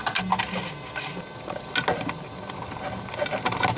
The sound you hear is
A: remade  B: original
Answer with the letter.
B